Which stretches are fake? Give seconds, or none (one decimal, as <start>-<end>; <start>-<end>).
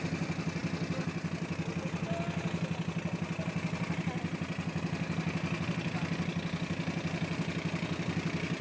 none